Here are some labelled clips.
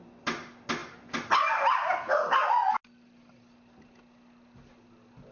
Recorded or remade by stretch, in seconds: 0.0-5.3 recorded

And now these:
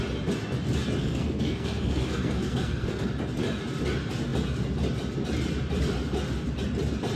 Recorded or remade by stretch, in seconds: 0.0-1.0 recorded; 1.0-3.1 remade; 3.1-7.2 recorded

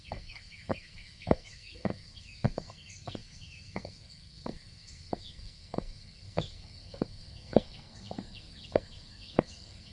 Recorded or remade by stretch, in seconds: 0.0-9.9 remade

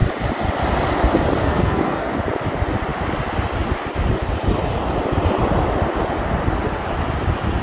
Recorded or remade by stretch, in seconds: 0.0-1.4 recorded; 1.4-2.1 remade; 2.1-7.6 recorded